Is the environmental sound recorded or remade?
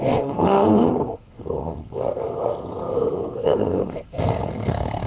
remade